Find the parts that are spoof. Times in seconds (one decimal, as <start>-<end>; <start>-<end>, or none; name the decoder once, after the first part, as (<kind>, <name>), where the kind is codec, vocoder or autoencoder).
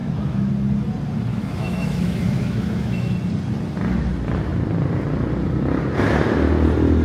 0.0-0.5 (autoencoder, DAC-VAE); 1.3-3.1